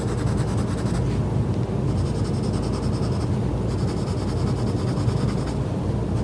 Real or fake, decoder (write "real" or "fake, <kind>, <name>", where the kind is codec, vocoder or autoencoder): real